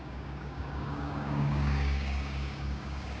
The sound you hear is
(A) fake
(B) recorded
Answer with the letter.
A